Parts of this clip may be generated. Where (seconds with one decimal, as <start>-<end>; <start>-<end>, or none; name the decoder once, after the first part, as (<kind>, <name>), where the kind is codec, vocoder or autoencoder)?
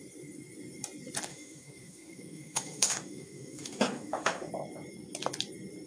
1.3-4.5 (autoencoder, DAC-VAE)